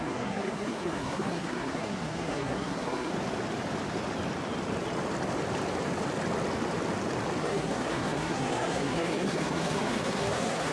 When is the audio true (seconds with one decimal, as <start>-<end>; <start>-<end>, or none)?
3.1-7.4